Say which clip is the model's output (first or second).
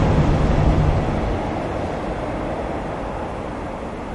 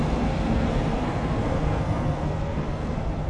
second